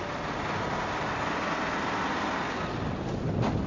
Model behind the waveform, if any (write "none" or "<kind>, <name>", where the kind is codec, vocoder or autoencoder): none